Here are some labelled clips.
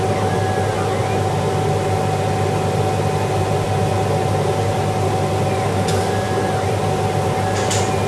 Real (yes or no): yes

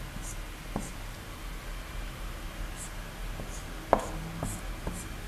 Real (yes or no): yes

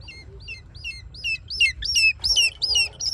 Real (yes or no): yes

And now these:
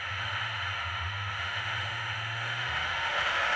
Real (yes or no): no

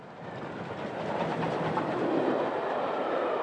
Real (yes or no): yes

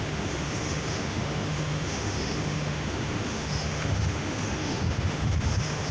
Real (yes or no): no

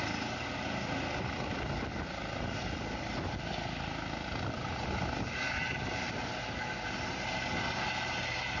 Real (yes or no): yes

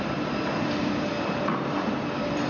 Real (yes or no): yes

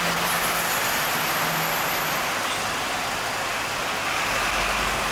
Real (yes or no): yes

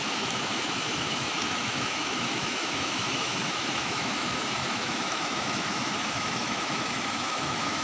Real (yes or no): no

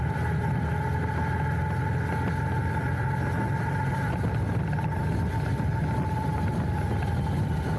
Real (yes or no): yes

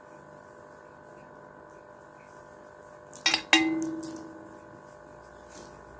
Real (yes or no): yes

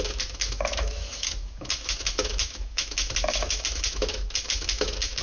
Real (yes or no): no